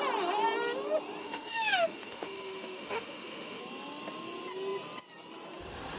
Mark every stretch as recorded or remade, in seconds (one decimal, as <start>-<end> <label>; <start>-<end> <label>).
0.0-1.2 recorded; 1.2-3.6 remade; 3.6-6.0 recorded